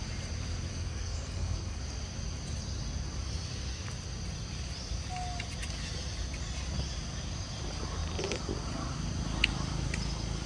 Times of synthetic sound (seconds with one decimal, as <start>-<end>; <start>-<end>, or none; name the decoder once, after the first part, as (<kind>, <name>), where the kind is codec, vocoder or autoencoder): 0.7-1.8 (codec, SNAC)